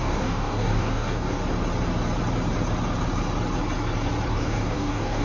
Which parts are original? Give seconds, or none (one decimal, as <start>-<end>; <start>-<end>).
1.4-4.3